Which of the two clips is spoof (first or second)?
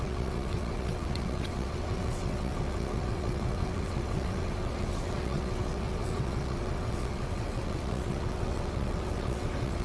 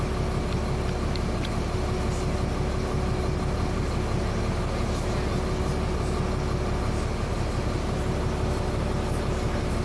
first